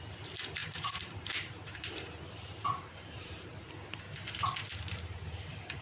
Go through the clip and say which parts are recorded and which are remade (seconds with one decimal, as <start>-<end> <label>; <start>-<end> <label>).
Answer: 0.0-0.6 recorded; 0.6-3.7 remade; 3.7-5.8 recorded